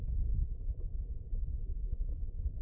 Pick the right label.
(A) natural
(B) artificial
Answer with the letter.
A